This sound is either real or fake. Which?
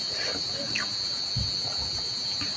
real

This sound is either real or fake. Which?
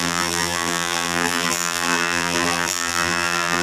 fake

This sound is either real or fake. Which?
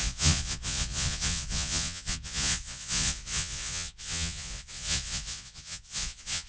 fake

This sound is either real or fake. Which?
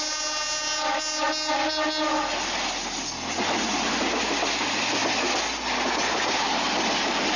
real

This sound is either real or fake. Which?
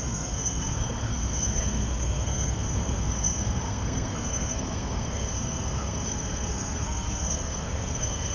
fake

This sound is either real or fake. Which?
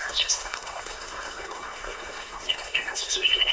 fake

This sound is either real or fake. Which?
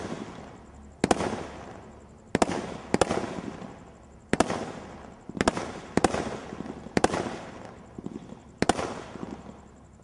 real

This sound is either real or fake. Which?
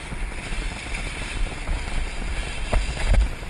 real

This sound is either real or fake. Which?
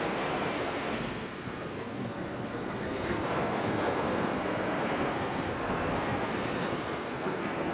fake